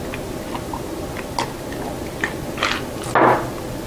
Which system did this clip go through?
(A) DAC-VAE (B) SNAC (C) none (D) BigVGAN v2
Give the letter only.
C